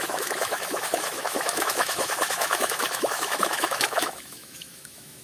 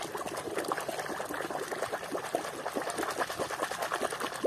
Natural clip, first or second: second